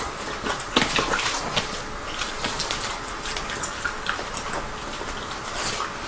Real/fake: real